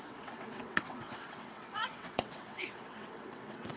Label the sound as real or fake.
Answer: fake